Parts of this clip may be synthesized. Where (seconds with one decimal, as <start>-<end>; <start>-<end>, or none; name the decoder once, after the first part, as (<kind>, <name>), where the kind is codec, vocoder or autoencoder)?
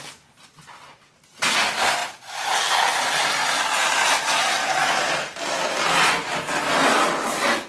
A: none